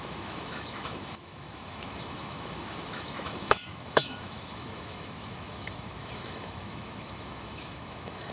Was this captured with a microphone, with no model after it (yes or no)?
no